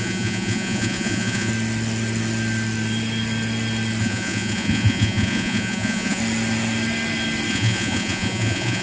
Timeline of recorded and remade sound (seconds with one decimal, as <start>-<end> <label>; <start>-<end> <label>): 0.0-1.5 remade; 1.5-4.0 recorded; 4.0-6.2 remade; 6.2-7.5 recorded; 7.5-8.8 remade